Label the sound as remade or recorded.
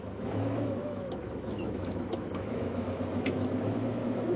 remade